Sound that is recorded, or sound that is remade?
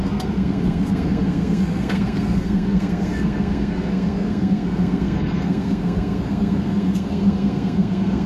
remade